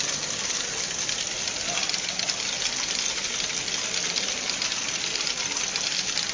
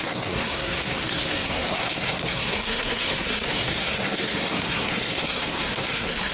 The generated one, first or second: second